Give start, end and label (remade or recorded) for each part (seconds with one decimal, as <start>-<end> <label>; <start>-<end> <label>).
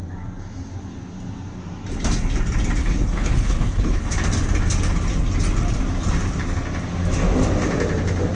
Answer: 0.0-2.8 recorded; 2.8-4.1 remade; 4.1-8.3 recorded